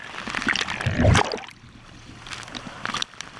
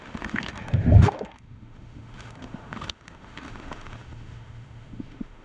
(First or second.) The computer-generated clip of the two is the second